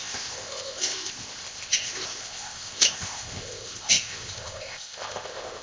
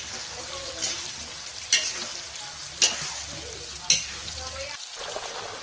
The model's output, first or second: first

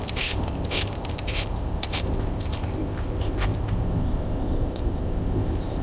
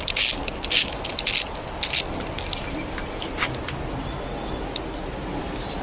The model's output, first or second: first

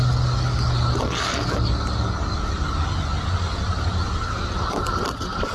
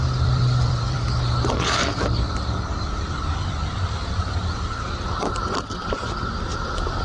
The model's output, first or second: second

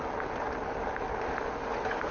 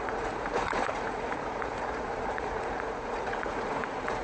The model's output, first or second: second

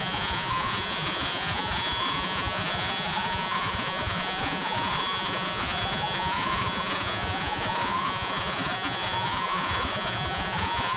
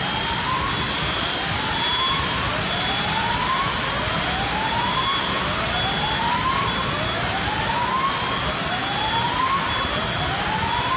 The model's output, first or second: first